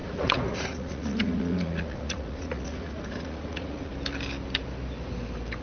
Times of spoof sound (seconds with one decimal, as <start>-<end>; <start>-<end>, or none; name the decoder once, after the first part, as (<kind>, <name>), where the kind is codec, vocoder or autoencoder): 0.0-3.9 (vocoder, Vocos)